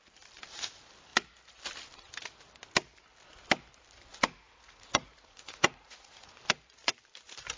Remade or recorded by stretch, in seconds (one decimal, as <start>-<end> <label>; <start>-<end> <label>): 0.0-4.1 recorded; 4.1-6.3 remade; 6.3-7.6 recorded